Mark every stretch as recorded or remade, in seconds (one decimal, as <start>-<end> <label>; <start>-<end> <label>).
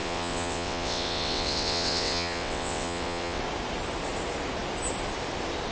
0.0-3.4 remade; 3.4-5.7 recorded